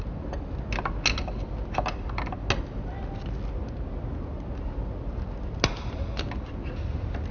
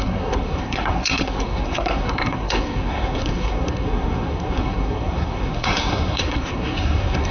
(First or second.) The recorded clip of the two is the first